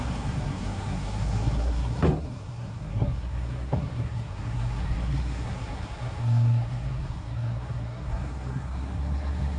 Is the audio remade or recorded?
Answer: remade